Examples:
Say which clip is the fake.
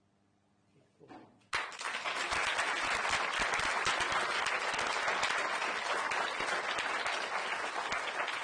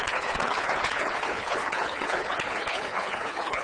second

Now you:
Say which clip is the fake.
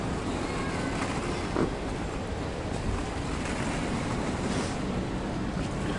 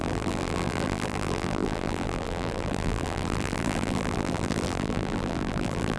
second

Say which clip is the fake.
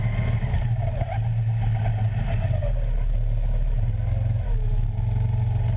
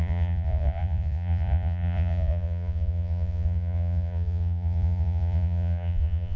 second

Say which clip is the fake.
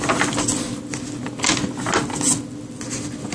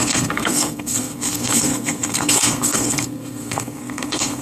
second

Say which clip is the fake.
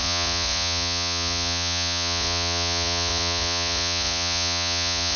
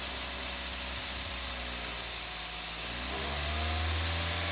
first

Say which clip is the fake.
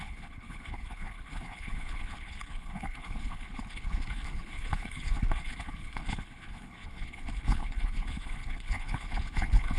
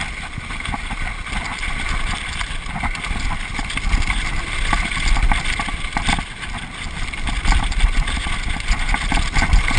first